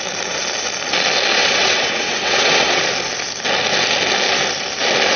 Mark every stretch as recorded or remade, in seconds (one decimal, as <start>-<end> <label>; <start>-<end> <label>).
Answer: 0.0-1.3 recorded; 1.3-2.8 remade; 2.8-5.2 recorded